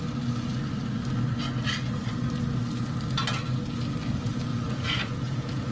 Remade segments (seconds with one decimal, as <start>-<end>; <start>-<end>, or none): 4.5-5.7